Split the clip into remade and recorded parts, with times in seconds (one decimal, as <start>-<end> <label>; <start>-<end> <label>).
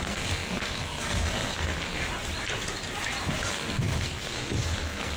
0.0-2.0 remade; 2.0-3.5 recorded; 3.5-5.2 remade